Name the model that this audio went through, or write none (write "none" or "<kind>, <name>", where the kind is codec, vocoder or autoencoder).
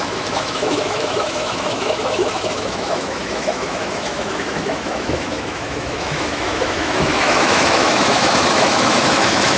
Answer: autoencoder, DAC-VAE